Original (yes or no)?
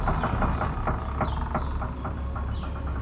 yes